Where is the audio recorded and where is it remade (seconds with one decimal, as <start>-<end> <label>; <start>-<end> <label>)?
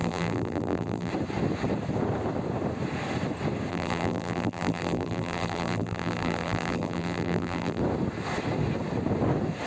0.0-1.1 remade; 1.1-3.7 recorded; 3.7-7.8 remade; 7.8-9.7 recorded